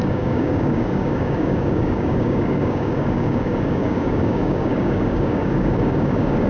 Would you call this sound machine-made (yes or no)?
yes